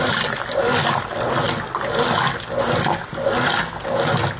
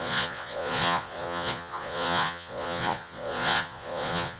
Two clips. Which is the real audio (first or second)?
first